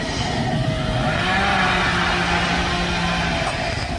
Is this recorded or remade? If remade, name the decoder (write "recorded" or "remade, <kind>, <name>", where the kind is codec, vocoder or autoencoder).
recorded